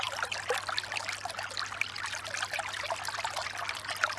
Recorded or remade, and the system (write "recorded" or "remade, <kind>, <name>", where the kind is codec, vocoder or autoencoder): recorded